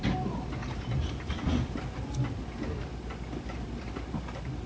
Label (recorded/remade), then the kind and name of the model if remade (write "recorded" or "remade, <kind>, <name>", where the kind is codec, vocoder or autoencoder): recorded